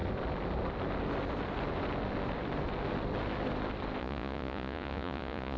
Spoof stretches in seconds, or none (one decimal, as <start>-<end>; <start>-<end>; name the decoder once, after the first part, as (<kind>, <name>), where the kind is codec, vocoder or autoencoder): 4.0-5.6 (vocoder, Vocos)